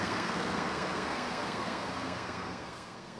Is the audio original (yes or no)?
no